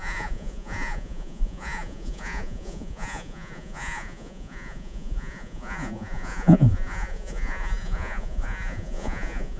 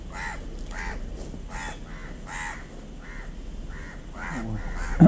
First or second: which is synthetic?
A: first